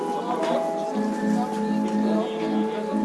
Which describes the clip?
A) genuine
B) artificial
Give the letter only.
A